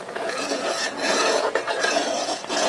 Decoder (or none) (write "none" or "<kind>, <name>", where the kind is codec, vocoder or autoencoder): vocoder, Vocos